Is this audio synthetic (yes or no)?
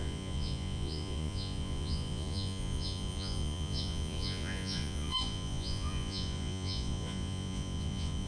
yes